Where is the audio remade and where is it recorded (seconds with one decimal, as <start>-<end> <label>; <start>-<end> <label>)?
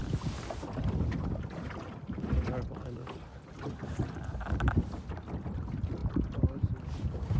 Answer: 0.0-7.4 recorded